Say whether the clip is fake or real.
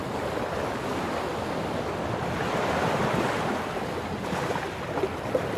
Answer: real